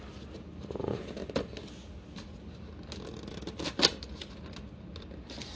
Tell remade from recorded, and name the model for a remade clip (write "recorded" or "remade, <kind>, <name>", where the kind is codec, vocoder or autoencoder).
recorded